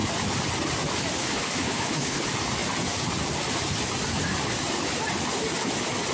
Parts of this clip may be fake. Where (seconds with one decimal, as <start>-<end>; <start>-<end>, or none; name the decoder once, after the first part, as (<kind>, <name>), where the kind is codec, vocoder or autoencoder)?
1.2-2.2 (codec, HILCodec)